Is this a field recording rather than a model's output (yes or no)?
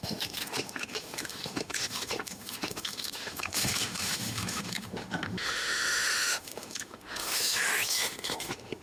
no